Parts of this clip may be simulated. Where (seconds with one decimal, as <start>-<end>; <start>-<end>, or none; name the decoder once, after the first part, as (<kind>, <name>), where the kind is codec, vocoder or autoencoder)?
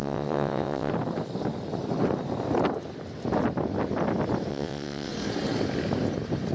0.0-0.9 (vocoder, WaveNeXt); 4.5-5.1